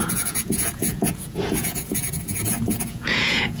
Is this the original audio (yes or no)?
no